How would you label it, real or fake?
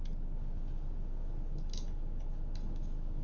real